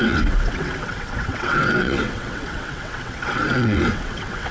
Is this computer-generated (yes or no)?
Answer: yes